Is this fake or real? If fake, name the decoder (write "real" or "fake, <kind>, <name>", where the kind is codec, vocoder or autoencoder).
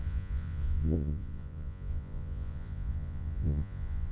fake, vocoder, Vocos